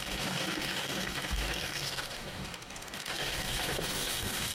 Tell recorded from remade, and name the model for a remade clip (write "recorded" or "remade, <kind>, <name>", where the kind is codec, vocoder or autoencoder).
remade, codec, DAC